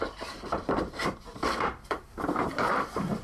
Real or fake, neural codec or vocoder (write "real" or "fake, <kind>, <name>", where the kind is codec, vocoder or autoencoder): fake, vocoder, BigVGAN v2